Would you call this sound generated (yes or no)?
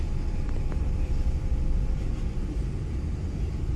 yes